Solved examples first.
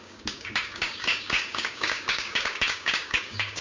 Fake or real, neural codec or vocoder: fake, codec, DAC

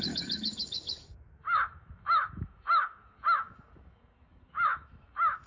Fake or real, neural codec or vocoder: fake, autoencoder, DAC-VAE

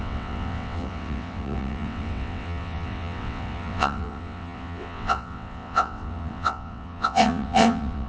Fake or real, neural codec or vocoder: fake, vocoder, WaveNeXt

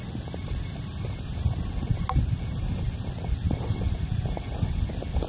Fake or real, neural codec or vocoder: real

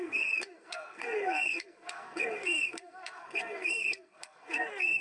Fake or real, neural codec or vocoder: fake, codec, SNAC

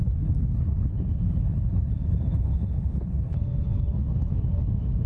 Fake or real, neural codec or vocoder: fake, codec, HILCodec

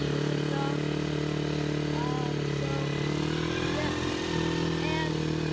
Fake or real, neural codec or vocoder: real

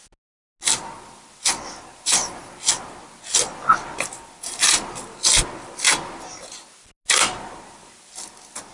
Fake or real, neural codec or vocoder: real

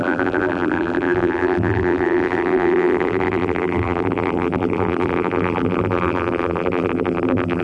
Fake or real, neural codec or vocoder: fake, vocoder, BigVGAN v2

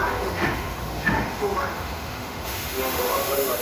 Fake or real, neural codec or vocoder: fake, autoencoder, DAC-VAE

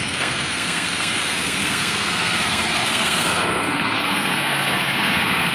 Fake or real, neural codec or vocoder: fake, codec, SNAC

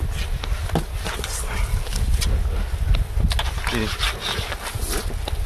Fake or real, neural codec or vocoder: real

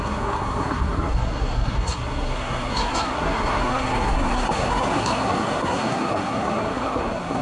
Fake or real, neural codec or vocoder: fake, codec, SNAC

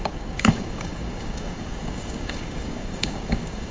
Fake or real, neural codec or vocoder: fake, codec, DAC